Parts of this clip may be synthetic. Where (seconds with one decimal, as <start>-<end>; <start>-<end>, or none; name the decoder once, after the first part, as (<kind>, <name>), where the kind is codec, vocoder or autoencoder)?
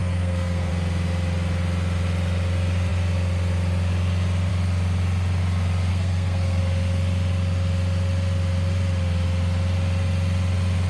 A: 0.0-0.7 (codec, SNAC); 5.9-6.6